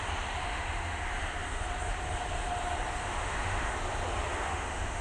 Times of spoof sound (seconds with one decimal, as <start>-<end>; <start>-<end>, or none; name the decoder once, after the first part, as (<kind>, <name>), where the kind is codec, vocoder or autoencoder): 0.4-1.0 (autoencoder, DAC-VAE); 3.0-3.7; 4.3-5.0